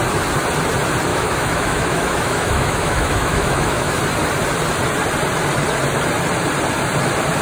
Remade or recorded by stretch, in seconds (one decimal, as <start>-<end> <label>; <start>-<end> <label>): 0.0-1.1 recorded; 1.1-4.0 remade; 4.0-7.4 recorded